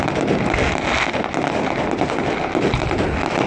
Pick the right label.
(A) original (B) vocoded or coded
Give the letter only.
A